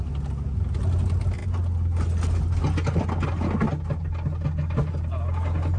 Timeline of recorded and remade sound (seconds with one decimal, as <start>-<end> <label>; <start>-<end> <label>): 0.0-5.8 recorded